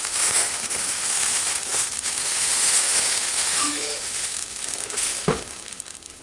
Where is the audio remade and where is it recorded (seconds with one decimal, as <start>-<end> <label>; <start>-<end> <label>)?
0.0-6.2 remade